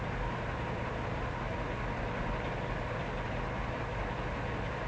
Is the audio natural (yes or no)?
yes